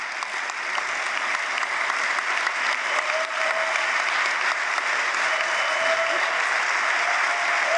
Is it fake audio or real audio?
real